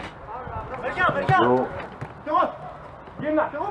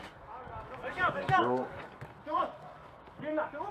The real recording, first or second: first